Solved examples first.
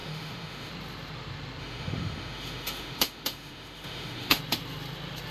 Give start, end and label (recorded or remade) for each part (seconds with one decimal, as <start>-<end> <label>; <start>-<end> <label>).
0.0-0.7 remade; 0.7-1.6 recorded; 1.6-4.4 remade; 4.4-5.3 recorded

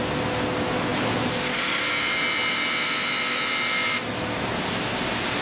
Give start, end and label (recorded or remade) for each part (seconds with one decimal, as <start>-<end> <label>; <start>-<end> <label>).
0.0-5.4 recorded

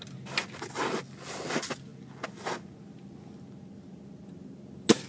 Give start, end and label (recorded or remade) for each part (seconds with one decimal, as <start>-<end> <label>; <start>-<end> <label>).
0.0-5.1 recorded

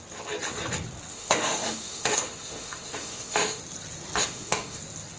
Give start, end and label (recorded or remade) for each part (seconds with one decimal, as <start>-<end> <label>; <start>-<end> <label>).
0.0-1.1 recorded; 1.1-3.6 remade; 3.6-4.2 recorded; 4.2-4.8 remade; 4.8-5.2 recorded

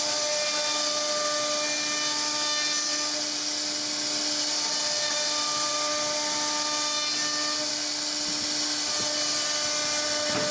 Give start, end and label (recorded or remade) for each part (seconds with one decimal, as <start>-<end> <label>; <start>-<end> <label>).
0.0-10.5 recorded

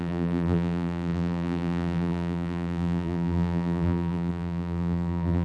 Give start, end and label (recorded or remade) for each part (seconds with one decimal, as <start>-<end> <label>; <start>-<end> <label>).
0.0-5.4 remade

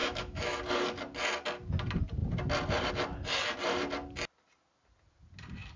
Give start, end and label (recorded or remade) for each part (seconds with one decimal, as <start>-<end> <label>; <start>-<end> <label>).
0.0-0.6 remade; 0.6-5.8 recorded

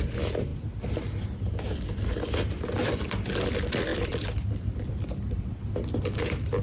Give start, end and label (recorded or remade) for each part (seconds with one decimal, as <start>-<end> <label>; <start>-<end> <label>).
0.0-3.9 recorded; 3.9-4.9 remade; 4.9-6.6 recorded